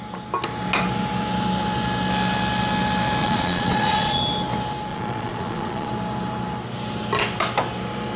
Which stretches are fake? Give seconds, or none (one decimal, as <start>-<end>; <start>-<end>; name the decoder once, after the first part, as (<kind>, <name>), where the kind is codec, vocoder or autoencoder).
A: 3.2-4.2 (vocoder, Vocos); 4.9-5.9